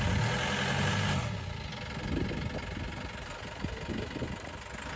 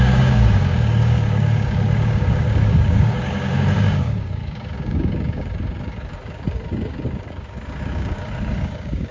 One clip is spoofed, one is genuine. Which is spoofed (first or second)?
second